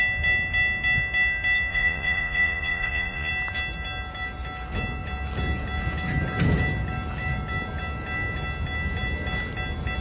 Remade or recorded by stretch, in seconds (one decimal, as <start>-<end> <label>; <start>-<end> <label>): 0.0-1.7 recorded; 1.7-3.3 remade; 3.3-10.0 recorded